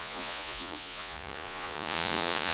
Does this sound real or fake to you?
fake